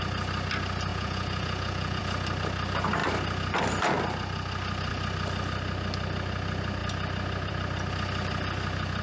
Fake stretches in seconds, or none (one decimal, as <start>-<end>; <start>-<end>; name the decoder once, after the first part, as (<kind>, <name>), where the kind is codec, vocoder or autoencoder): 0.9-2.0 (vocoder, Vocos)